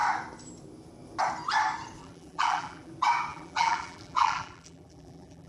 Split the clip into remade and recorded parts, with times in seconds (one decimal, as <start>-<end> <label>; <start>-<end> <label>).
0.0-2.0 recorded; 2.0-2.9 remade; 2.9-3.3 recorded; 3.3-5.5 remade